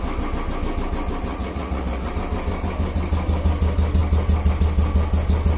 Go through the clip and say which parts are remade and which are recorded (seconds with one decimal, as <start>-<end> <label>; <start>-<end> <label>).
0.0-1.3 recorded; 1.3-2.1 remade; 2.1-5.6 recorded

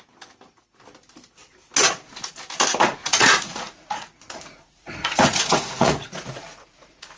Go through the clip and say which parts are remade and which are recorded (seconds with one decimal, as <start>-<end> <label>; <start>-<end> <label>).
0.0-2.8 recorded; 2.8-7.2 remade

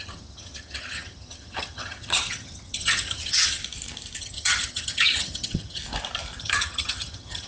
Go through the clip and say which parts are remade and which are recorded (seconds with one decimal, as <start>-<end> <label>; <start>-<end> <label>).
0.0-3.6 remade; 3.6-4.2 recorded; 4.2-5.8 remade; 5.8-6.4 recorded; 6.4-7.5 remade

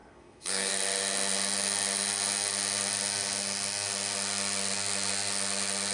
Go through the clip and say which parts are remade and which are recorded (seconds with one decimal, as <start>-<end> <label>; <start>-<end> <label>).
0.0-0.7 remade; 0.7-5.9 recorded

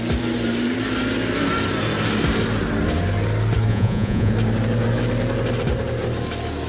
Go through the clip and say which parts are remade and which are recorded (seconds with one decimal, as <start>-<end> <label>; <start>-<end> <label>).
0.0-3.7 recorded; 3.7-4.3 remade; 4.3-6.7 recorded